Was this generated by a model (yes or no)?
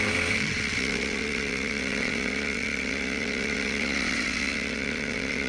yes